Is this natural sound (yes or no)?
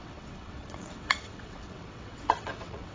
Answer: no